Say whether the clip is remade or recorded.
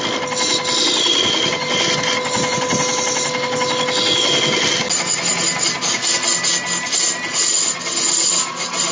recorded